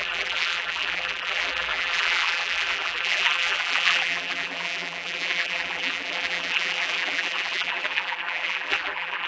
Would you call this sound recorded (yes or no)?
no